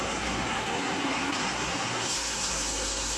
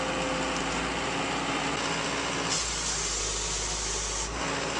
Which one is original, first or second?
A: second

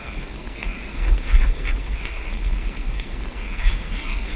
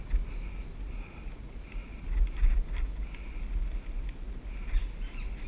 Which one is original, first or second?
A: second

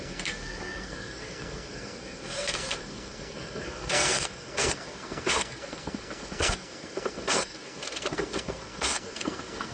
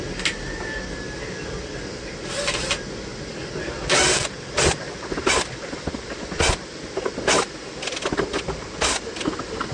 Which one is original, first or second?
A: second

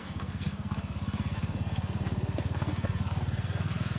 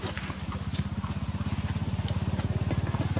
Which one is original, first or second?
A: second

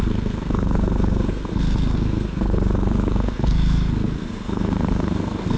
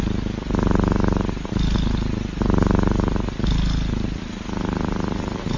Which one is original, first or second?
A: second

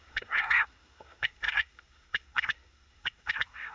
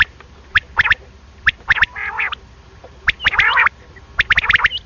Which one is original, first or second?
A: second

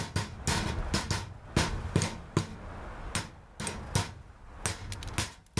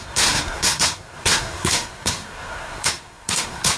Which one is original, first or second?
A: first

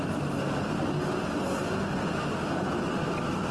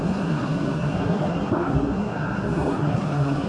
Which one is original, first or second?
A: first